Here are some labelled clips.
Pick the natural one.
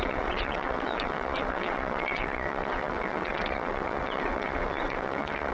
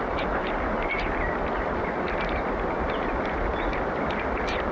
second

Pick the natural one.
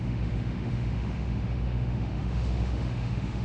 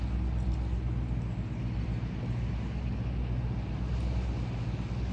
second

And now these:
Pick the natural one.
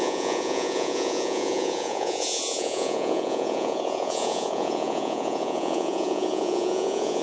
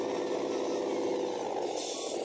second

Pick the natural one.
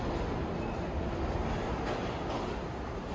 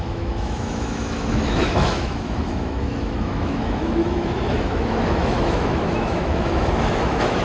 first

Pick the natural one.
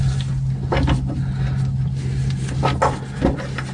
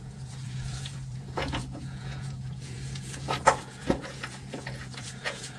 first